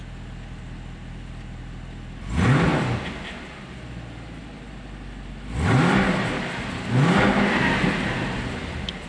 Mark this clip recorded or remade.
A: recorded